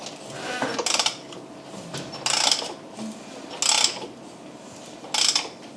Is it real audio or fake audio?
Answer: real